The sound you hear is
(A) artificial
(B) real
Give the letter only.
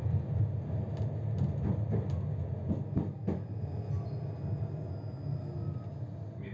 B